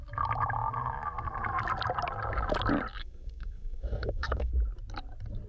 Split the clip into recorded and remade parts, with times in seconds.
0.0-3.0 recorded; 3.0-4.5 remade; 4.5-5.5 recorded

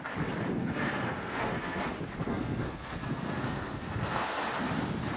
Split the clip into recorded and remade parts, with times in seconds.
0.0-0.6 recorded; 0.6-1.9 remade; 1.9-2.3 recorded; 2.3-4.4 remade; 4.4-5.2 recorded

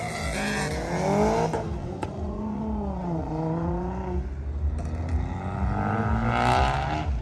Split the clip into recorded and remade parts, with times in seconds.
0.0-1.8 recorded; 1.8-2.6 remade; 2.6-3.0 recorded; 3.0-3.7 remade; 3.7-7.2 recorded

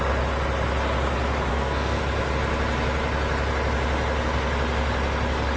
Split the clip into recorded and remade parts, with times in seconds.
0.0-1.5 recorded; 1.5-2.0 remade; 2.0-5.6 recorded

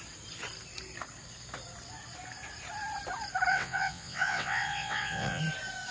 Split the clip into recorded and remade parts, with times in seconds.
0.0-3.5 recorded; 3.5-5.4 remade; 5.4-5.9 recorded

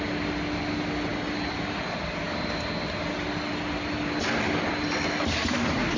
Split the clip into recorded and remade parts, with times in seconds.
0.0-6.0 recorded